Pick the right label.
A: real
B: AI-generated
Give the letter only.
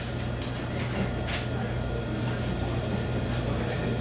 A